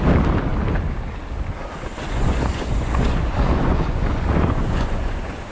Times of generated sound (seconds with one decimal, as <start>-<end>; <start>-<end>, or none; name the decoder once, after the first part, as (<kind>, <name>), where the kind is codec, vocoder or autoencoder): 1.9-5.5 (vocoder, Vocos)